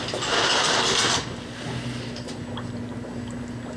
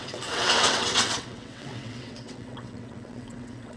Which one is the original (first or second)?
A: first